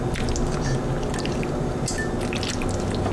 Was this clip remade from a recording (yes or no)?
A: no